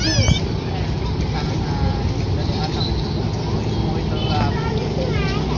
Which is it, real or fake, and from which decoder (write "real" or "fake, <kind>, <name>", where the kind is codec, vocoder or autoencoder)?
real